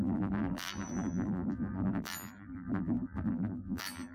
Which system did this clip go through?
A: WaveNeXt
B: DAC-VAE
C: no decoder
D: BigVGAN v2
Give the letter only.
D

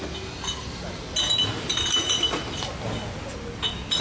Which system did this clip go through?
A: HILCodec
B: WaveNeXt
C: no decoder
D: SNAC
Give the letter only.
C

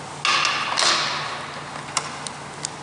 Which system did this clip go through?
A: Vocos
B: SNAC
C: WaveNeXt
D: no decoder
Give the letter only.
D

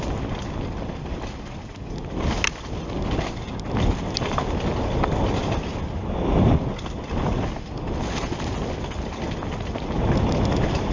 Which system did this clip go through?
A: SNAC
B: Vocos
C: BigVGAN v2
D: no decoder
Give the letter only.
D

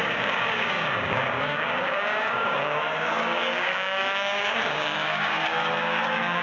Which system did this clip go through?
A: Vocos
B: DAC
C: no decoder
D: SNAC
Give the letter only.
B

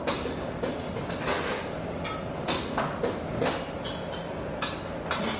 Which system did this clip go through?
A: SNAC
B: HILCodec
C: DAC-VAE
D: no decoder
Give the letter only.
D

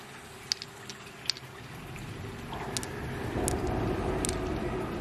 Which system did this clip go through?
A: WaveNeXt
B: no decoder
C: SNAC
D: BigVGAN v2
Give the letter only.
B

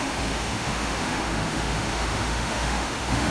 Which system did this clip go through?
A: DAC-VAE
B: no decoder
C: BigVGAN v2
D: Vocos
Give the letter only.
A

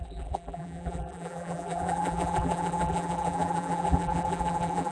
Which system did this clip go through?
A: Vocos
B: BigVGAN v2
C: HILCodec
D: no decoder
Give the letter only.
B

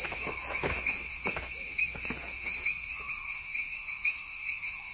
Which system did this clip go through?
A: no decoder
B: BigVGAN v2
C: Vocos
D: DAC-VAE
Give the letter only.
D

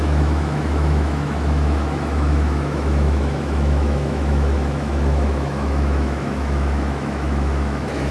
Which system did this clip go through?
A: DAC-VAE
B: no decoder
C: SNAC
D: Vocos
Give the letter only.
A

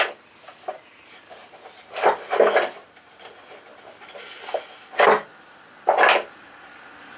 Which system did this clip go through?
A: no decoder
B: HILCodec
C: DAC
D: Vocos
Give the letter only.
A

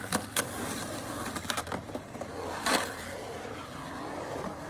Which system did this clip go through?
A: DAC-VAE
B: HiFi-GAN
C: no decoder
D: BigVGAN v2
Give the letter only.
C